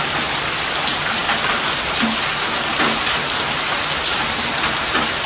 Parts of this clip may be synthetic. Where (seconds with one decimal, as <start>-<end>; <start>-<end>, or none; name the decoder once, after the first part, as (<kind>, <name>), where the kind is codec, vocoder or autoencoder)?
none